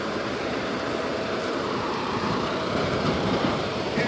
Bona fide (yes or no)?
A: no